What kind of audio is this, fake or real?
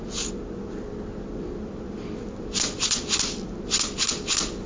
real